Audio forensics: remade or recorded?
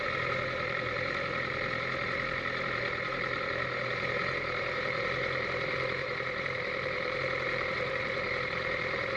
remade